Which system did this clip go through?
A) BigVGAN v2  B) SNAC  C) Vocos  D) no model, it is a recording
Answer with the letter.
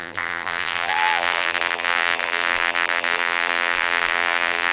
A